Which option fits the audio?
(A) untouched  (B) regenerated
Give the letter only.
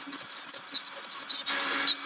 A